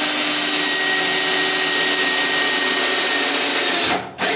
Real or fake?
real